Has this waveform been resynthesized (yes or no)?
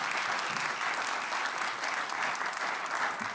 no